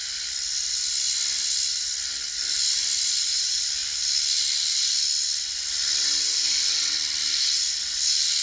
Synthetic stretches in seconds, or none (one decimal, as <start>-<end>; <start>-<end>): none